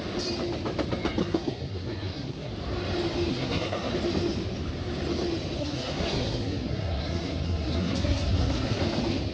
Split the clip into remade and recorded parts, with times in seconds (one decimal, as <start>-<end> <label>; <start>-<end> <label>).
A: 0.0-1.2 recorded; 1.2-2.5 remade; 2.5-3.3 recorded; 3.3-3.9 remade; 3.9-5.6 recorded; 5.6-8.8 remade; 8.8-9.3 recorded